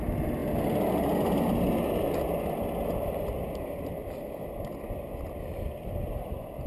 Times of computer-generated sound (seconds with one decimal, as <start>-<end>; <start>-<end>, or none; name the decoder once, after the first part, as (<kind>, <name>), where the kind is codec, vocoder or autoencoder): none